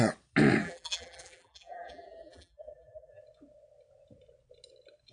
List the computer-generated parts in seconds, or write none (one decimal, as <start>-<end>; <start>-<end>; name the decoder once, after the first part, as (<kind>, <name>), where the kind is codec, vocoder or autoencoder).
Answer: 0.6-3.2 (vocoder, BigVGAN v2)